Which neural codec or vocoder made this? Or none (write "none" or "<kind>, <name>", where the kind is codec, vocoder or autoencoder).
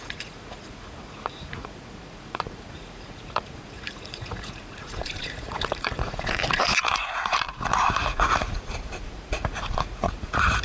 vocoder, Vocos